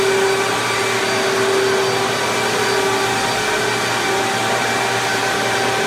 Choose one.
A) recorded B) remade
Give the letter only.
A